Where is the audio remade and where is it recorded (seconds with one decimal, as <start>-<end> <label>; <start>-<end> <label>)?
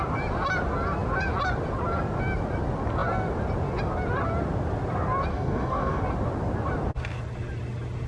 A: 0.0-5.3 recorded; 5.3-6.0 remade; 6.0-8.1 recorded